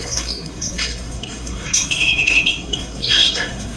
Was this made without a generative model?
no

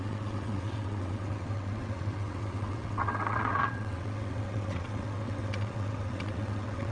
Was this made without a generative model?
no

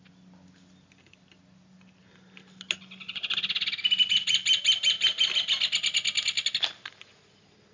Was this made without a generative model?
yes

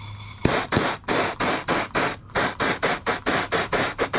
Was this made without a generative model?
yes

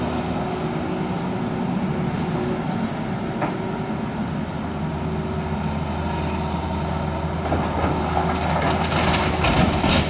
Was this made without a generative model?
yes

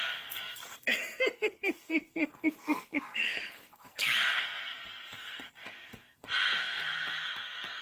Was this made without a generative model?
no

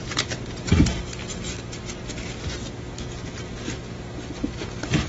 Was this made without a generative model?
yes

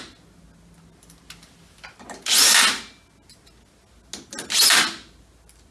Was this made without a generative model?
yes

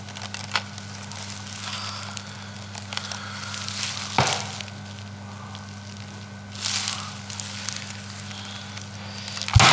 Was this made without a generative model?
yes